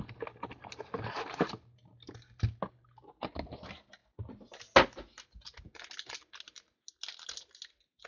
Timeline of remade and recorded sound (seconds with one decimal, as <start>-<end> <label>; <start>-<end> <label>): 0.0-8.1 recorded